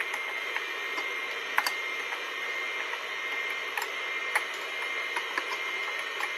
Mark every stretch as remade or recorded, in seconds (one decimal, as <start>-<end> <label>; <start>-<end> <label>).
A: 0.0-6.4 recorded